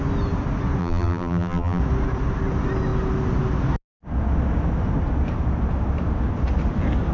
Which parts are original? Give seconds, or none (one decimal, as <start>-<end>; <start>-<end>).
0.0-0.8; 1.8-7.1